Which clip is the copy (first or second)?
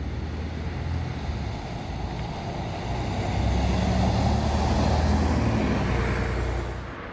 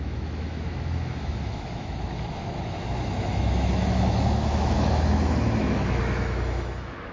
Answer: second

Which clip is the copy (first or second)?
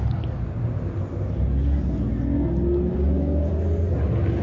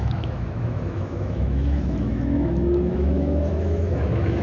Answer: second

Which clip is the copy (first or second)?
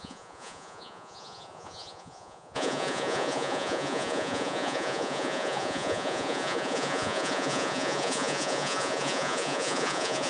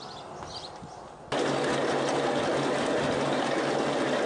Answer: first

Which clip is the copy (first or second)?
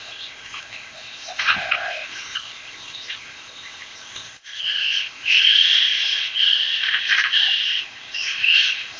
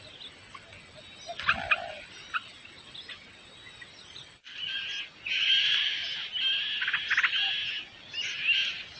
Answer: first